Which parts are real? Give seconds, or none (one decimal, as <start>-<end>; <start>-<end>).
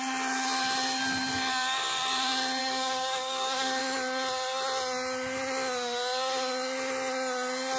0.0-2.6; 3.8-7.8